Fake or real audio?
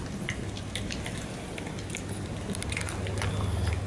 real